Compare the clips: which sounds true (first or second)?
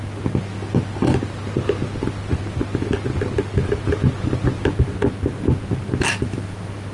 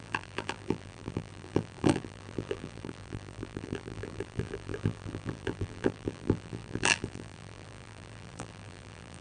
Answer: first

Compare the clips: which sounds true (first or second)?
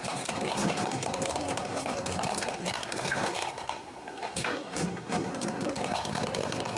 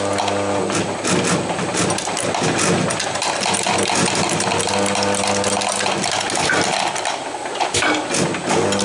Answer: second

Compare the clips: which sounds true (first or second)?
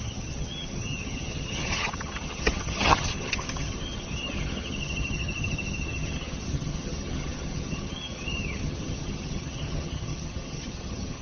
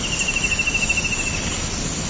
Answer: second